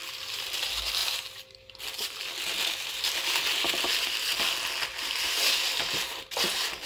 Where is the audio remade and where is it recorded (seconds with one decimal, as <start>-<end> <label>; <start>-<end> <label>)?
0.0-6.9 recorded